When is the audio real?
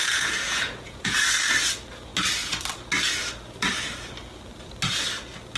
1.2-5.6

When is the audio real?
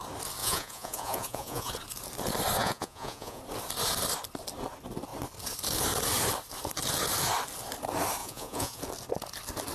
0.0-0.4; 1.7-2.6; 3.4-8.2; 8.8-9.7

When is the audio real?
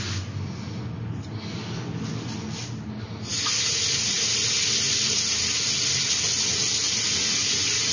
0.0-7.9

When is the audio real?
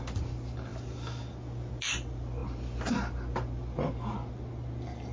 0.0-5.1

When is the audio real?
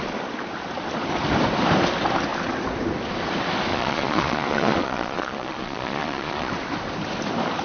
0.0-3.7; 6.5-7.6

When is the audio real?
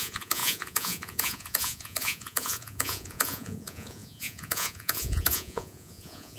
none